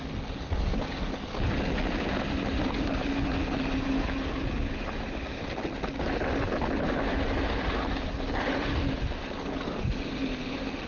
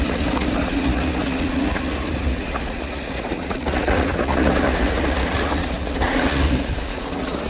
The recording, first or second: first